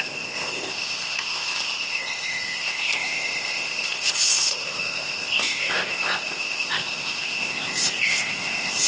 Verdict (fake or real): fake